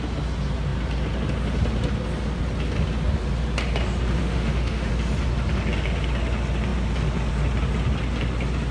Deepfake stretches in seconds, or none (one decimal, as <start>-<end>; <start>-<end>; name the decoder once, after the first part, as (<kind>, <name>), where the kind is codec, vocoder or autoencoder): 4.2-4.9 (autoencoder, DAC-VAE)